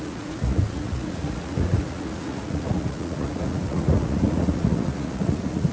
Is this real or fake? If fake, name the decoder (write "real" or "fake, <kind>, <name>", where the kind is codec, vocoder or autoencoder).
fake, vocoder, Vocos